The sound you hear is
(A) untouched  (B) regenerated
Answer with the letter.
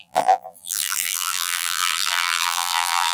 B